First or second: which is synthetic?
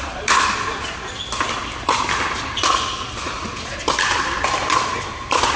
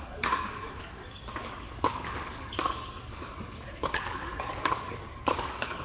second